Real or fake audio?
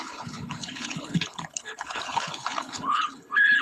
fake